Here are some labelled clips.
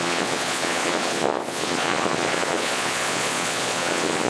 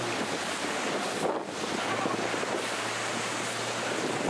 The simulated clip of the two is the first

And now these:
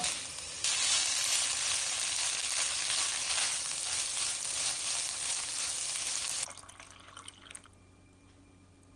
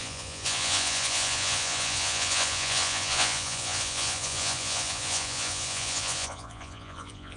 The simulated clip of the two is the second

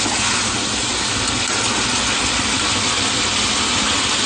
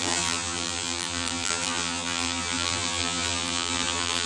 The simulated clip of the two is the second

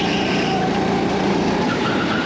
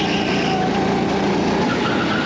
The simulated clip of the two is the first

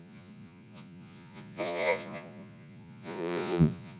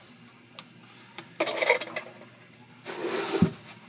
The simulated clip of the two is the first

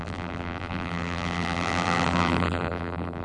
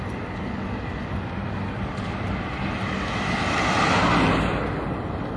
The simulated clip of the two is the first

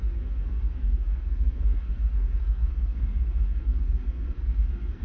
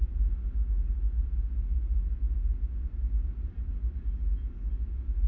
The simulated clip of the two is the first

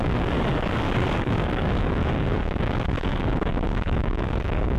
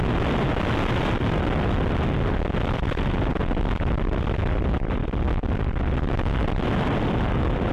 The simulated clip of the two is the first